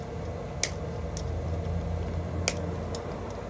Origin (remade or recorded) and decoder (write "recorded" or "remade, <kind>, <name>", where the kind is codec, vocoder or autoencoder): recorded